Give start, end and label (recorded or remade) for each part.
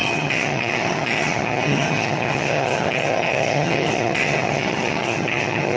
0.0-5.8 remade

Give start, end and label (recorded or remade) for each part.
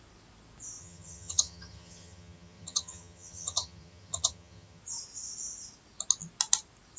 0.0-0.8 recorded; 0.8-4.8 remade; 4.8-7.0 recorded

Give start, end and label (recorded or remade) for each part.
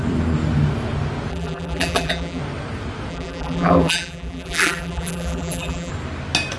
0.0-1.3 recorded; 1.3-2.4 remade; 2.4-3.1 recorded; 3.1-5.9 remade; 5.9-6.6 recorded